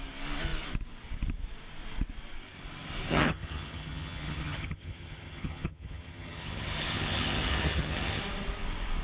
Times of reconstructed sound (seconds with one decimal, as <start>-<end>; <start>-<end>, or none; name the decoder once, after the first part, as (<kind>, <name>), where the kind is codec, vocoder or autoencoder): 3.1-8.2 (vocoder, HiFi-GAN)